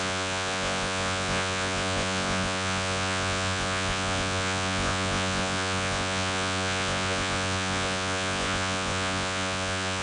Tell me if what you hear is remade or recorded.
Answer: remade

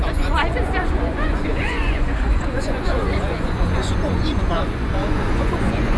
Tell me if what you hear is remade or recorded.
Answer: remade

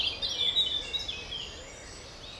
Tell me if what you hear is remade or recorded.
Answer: recorded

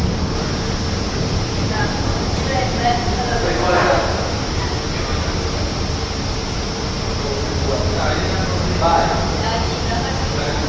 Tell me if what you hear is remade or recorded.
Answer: recorded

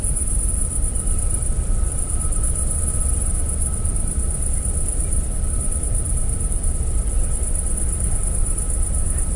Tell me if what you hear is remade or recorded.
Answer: recorded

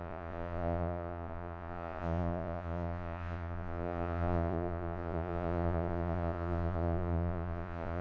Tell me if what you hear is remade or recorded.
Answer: remade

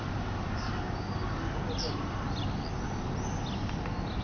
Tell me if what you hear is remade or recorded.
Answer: recorded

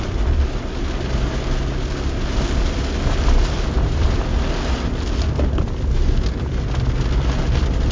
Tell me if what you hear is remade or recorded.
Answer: recorded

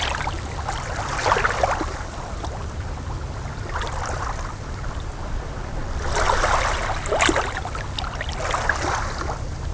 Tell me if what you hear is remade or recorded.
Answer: recorded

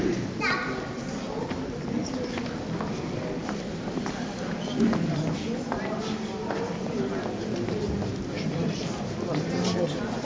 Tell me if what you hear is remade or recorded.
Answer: recorded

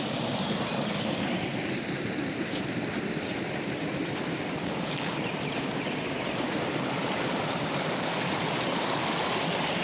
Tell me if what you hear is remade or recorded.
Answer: recorded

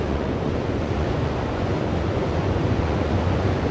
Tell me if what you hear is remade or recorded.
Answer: remade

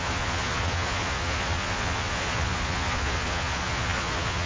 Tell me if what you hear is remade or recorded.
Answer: remade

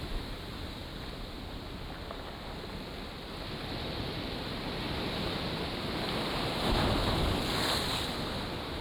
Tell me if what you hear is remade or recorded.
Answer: recorded